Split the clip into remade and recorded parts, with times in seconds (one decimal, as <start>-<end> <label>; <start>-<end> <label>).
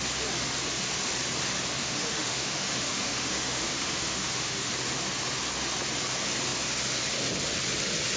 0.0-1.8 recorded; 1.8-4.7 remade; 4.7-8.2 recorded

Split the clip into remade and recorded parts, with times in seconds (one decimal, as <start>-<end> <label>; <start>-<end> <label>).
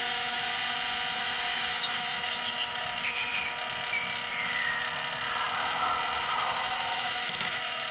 0.0-0.4 remade; 0.4-1.2 recorded; 1.2-3.3 remade; 3.3-6.2 recorded; 6.2-7.9 remade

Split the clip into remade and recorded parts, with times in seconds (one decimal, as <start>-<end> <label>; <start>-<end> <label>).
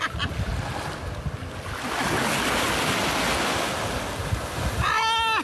0.0-5.4 recorded